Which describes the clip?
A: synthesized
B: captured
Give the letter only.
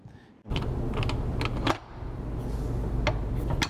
B